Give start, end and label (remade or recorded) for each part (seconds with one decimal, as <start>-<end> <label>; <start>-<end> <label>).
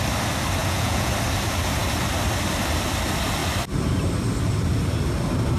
0.0-0.6 recorded; 0.6-1.1 remade; 1.1-5.6 recorded